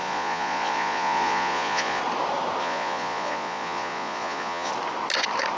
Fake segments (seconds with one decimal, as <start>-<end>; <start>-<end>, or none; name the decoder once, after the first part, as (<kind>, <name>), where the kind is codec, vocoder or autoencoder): 0.0-2.0 (vocoder, Vocos); 2.6-4.7